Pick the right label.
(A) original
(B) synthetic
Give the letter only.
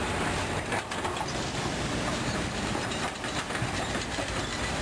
B